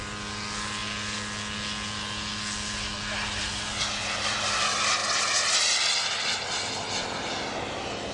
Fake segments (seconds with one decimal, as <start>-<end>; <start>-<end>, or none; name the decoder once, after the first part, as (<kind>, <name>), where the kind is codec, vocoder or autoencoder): none